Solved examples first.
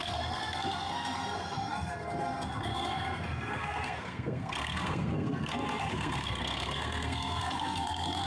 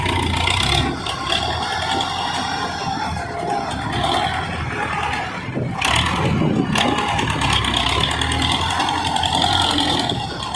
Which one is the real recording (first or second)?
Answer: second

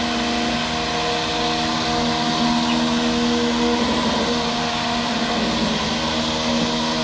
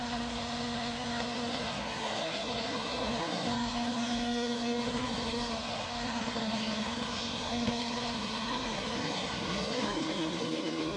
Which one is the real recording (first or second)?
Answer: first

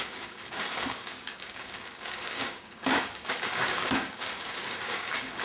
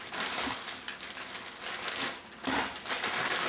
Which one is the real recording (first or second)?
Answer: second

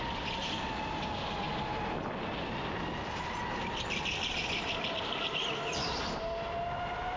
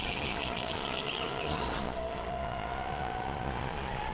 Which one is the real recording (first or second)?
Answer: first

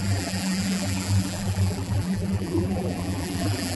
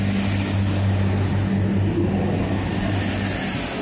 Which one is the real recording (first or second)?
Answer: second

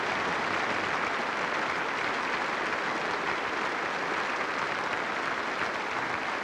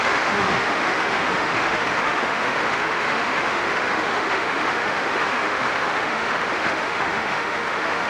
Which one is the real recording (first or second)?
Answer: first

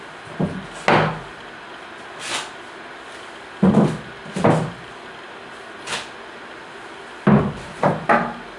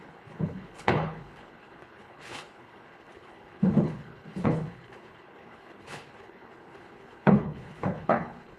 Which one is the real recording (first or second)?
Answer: first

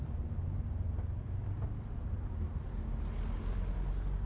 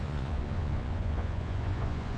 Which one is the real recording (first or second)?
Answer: first